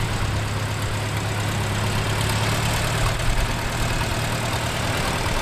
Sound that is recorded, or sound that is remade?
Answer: recorded